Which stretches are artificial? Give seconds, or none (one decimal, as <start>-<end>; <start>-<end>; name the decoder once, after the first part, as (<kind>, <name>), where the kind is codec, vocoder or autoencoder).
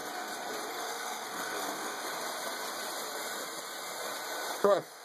0.7-2.1 (codec, SNAC); 4.6-5.0